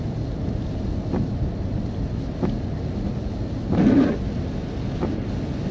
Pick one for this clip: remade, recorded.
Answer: recorded